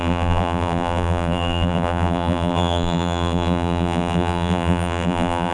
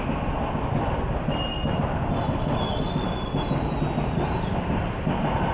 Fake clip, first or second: first